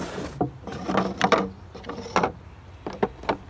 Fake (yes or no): no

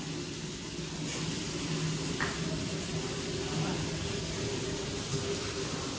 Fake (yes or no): no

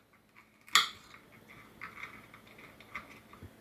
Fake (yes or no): no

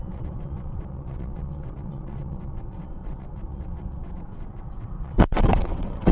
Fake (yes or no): yes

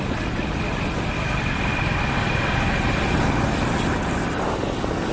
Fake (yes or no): no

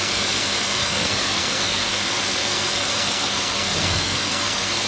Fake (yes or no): yes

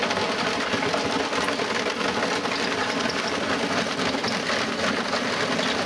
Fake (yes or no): no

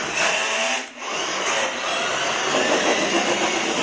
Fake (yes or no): no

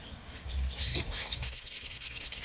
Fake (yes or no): yes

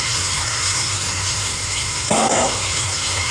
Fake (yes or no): yes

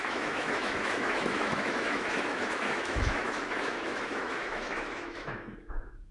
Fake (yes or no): yes